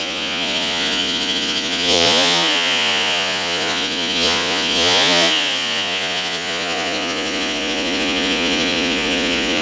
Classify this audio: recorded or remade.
remade